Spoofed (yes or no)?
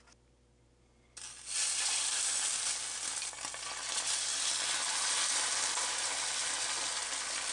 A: no